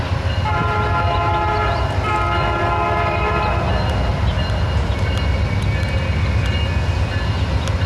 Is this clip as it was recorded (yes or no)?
yes